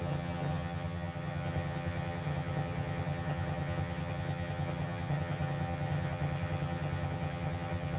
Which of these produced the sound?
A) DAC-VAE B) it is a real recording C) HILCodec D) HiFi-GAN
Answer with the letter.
D